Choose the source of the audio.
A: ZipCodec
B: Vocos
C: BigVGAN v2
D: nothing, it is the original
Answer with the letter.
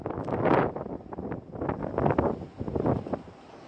D